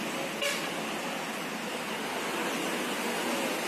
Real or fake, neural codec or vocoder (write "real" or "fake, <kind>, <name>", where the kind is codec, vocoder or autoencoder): real